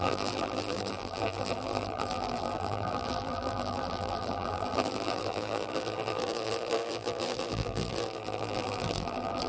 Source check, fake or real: fake